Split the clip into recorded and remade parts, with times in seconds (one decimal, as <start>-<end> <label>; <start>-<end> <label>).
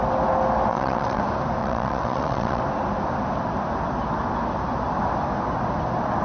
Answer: 0.0-0.7 recorded; 0.7-1.2 remade; 1.2-1.6 recorded; 1.6-2.6 remade; 2.6-6.2 recorded